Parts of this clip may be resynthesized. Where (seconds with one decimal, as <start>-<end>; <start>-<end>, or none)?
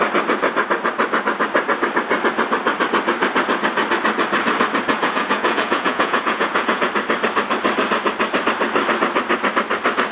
5.0-6.9